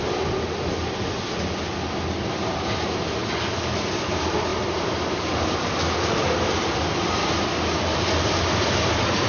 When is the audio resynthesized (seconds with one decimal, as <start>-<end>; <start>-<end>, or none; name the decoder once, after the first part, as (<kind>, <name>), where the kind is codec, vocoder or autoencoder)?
none